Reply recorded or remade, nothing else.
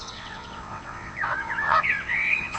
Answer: remade